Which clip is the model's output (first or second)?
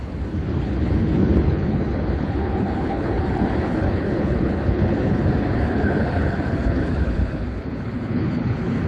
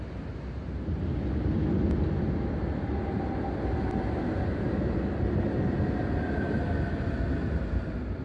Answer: first